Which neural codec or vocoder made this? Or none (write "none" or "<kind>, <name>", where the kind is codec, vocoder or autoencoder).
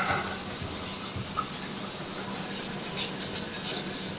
none